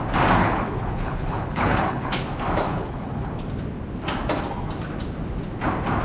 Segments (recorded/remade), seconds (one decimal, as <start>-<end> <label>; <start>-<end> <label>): 0.0-0.4 recorded; 0.4-2.2 remade; 2.2-2.7 recorded; 2.7-3.3 remade; 3.3-6.0 recorded